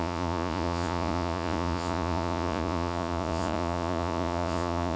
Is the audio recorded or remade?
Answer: remade